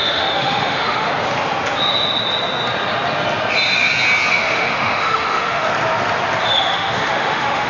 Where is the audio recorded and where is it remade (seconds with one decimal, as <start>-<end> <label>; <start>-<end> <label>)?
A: 0.0-1.1 remade; 1.1-4.3 recorded; 4.3-5.7 remade; 5.7-6.4 recorded; 6.4-7.7 remade